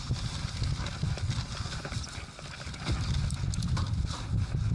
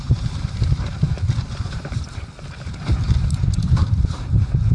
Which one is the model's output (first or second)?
second